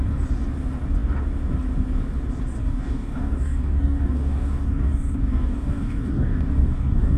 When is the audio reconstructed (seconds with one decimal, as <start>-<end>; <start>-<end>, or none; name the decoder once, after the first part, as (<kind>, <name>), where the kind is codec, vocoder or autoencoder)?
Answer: 2.6-7.2 (codec, DAC)

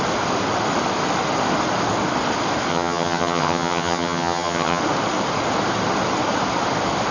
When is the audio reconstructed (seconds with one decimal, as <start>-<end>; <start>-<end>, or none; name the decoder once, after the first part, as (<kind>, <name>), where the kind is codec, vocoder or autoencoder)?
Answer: 2.7-4.8 (vocoder, HiFi-GAN)

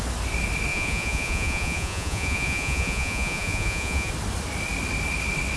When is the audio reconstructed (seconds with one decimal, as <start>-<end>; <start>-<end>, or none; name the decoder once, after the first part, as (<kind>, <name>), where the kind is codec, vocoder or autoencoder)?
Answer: 0.7-4.1 (vocoder, Vocos)

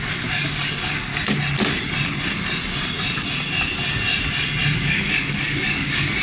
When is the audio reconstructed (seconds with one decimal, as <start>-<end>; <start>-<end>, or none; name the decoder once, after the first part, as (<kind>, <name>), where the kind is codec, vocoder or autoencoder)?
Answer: 0.0-1.1 (codec, DAC); 4.8-6.2